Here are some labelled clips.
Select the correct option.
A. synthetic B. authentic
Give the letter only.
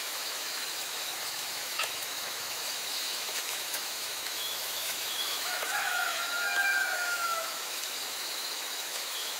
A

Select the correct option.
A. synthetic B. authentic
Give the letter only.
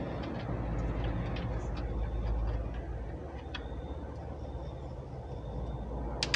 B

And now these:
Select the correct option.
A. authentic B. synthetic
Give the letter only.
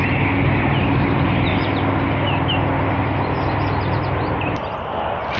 A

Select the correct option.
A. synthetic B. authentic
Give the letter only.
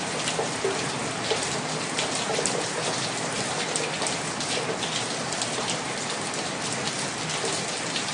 B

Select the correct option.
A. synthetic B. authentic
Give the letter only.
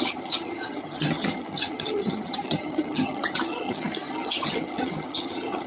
A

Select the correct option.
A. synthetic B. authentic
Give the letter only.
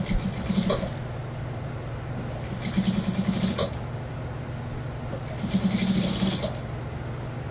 B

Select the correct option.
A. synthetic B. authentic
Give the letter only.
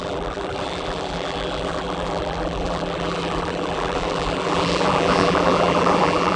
A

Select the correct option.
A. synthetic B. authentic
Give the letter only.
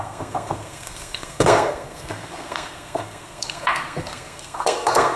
A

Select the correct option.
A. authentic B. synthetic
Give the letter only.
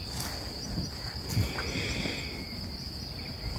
A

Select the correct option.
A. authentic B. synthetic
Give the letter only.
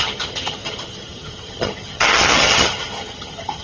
B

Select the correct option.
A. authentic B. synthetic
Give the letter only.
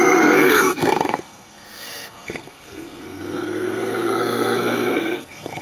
B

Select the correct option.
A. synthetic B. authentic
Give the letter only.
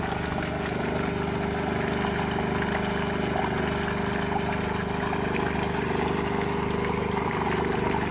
B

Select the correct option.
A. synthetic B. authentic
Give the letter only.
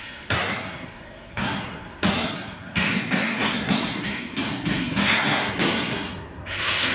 A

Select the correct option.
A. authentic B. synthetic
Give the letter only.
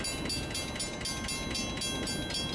A